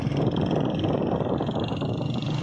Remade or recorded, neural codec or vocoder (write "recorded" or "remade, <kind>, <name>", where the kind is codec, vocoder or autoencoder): recorded